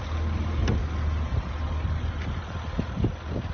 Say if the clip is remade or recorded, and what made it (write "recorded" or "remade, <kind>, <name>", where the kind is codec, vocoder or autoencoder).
recorded